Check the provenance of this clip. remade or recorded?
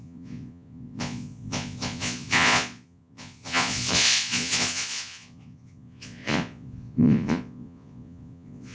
remade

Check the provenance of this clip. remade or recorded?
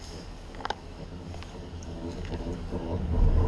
remade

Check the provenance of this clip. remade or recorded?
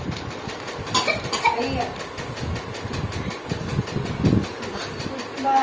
recorded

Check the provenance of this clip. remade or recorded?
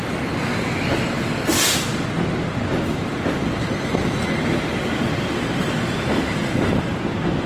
recorded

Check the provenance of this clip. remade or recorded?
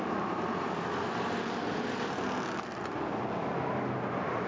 recorded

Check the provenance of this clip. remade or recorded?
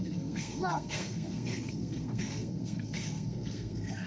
remade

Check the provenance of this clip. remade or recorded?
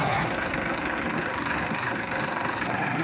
remade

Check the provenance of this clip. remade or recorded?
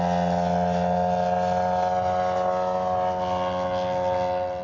recorded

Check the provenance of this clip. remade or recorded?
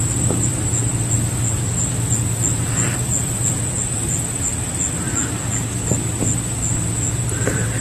recorded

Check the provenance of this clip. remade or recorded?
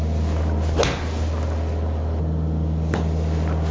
recorded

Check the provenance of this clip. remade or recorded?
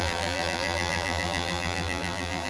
remade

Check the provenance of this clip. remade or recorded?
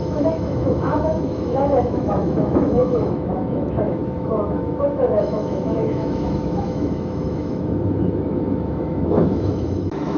remade